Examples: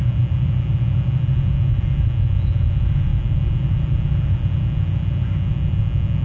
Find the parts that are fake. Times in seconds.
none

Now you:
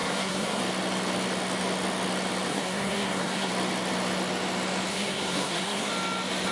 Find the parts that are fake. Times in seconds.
0.0-0.6 (codec, SNAC); 2.5-3.5; 4.9-5.9

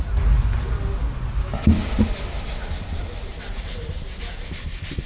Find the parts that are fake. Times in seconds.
none

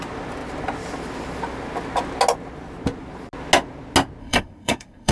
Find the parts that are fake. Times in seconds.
4.2-5.1 (codec, SNAC)

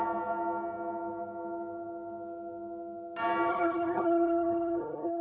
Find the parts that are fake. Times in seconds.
3.5-5.2 (codec, SNAC)